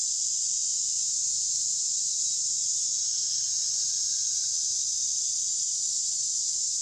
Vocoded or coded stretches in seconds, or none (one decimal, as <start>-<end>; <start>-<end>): none